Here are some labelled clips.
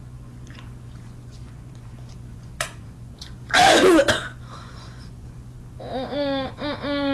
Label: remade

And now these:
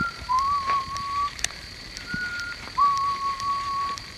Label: remade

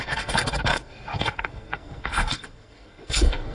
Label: remade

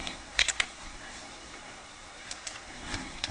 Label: remade